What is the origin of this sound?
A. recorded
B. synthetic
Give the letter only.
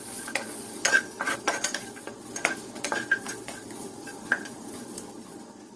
B